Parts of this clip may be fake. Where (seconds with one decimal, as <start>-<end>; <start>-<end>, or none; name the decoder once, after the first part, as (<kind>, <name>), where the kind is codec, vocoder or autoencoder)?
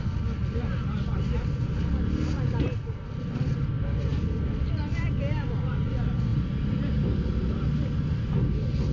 none